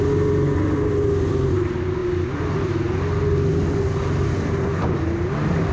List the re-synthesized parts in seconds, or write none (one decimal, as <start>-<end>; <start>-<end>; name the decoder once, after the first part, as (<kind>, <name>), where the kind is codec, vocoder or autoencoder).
none